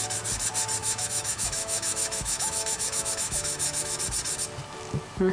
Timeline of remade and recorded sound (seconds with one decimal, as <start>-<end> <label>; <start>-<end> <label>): 0.0-0.8 recorded; 0.8-4.0 remade; 4.0-5.3 recorded